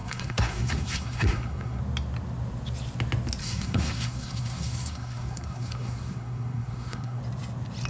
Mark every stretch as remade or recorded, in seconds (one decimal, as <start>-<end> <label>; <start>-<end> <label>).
0.0-1.8 remade; 1.8-3.4 recorded; 3.4-7.2 remade; 7.2-7.9 recorded